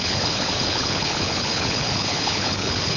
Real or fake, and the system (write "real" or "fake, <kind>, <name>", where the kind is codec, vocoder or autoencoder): fake, codec, HILCodec